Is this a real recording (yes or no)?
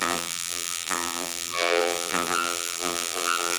no